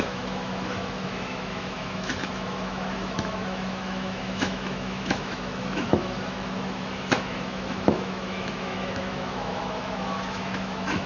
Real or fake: fake